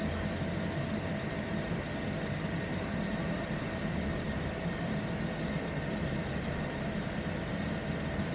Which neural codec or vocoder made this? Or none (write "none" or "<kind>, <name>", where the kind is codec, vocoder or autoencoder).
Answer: none